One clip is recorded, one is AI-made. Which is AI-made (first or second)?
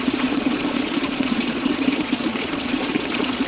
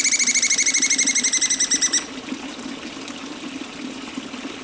first